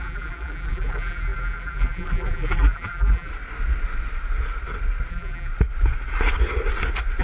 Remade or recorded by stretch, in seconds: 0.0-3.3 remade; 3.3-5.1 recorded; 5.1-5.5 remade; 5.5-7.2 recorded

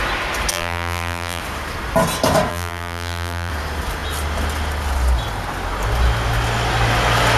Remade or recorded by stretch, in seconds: 0.0-0.5 recorded; 0.5-1.4 remade; 1.4-2.5 recorded; 2.5-3.5 remade; 3.5-7.4 recorded